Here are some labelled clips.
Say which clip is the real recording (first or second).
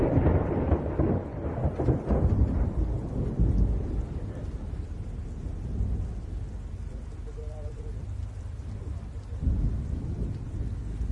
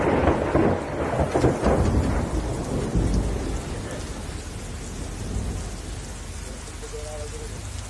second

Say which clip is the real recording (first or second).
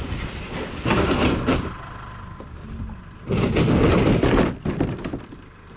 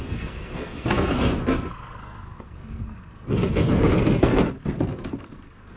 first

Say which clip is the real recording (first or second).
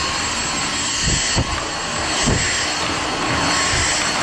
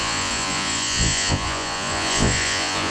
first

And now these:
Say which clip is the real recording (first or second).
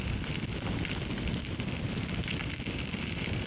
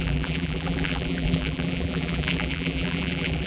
first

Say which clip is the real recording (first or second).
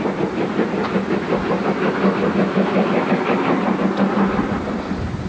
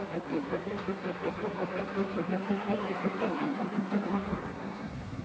first